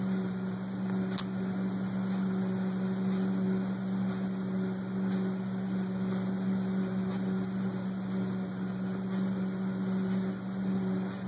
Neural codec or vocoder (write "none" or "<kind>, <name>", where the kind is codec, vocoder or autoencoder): none